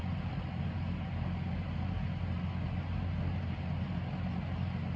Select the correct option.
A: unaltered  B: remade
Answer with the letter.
A